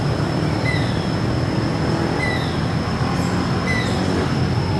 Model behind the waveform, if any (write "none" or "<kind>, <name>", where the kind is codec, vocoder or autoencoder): none